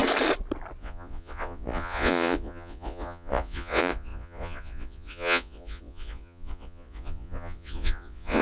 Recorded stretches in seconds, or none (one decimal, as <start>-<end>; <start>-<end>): 0.0-0.8